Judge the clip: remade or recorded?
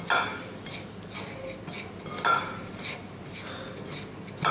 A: recorded